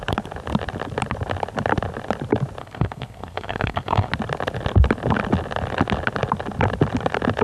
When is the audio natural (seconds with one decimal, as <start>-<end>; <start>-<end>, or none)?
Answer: 0.0-2.6; 4.1-7.4